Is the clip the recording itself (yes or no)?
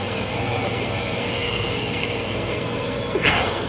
no